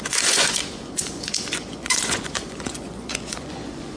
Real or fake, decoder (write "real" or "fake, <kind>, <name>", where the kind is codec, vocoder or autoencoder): fake, vocoder, Vocos